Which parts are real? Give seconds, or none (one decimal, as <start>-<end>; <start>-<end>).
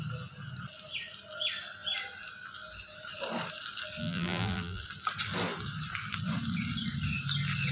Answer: 0.0-4.0; 4.8-7.7